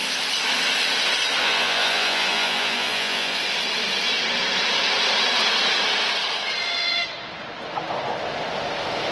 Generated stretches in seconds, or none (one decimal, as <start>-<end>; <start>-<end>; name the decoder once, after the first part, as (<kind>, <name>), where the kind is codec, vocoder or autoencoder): 1.4-3.4 (vocoder, Vocos)